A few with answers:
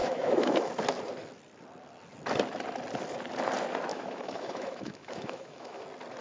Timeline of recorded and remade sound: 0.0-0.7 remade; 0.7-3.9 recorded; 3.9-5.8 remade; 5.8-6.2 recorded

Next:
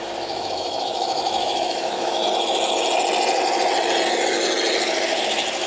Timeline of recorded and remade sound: 0.0-2.2 remade; 2.2-5.7 recorded

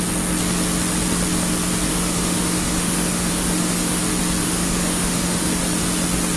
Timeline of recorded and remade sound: 0.0-1.9 recorded; 1.9-4.0 remade; 4.0-4.4 recorded; 4.4-5.5 remade; 5.5-6.4 recorded

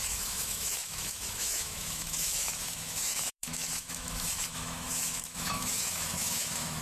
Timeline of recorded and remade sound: 0.0-6.8 remade